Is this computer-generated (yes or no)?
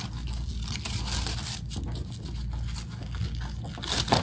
no